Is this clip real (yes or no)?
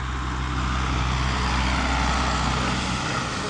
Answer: yes